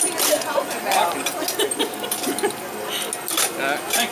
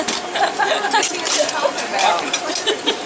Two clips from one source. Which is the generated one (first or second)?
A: second